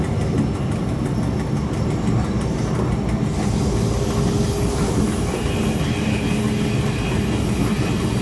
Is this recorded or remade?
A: recorded